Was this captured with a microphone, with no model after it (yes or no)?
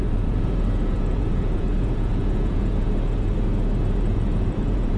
no